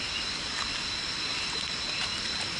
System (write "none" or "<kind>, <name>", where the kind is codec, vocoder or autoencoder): none